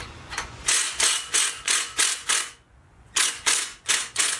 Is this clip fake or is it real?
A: fake